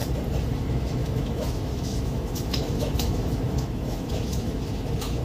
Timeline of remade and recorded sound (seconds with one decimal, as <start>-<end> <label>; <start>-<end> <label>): 0.0-0.6 recorded; 0.6-5.2 remade